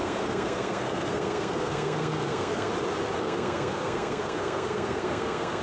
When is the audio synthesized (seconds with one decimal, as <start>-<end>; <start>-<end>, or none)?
0.0-2.7; 3.2-5.6